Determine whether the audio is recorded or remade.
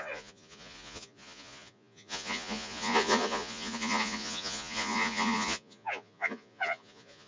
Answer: remade